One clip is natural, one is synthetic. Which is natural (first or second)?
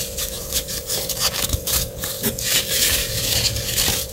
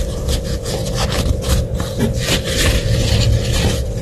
second